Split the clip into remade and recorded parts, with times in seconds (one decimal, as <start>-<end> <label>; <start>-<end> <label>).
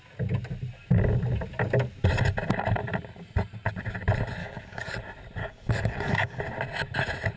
0.0-4.4 recorded; 4.4-5.0 remade; 5.0-5.4 recorded; 5.4-6.4 remade; 6.4-7.4 recorded